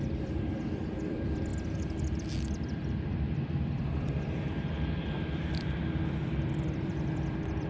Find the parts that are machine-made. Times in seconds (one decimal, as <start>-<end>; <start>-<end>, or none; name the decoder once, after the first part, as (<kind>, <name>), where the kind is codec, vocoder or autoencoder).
0.0-7.7 (vocoder, BigVGAN v2)